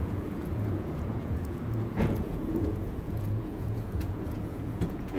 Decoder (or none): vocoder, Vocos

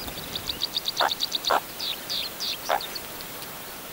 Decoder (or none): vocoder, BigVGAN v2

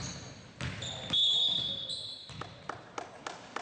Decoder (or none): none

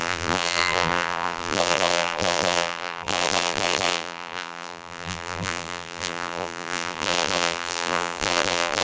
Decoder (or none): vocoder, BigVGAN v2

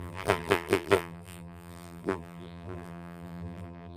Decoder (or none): vocoder, BigVGAN v2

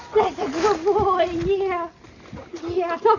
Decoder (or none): none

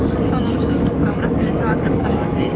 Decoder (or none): codec, DAC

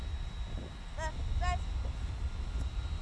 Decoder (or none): none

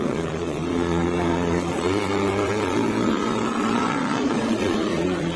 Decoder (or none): vocoder, Vocos